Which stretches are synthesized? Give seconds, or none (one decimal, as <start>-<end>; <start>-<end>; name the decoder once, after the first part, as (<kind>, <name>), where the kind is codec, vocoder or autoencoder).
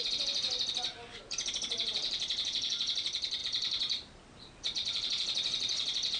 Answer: 0.0-6.2 (vocoder, BigVGAN v2)